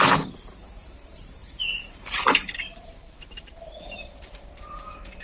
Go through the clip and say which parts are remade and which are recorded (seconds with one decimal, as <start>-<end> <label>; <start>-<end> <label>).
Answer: 0.0-5.2 remade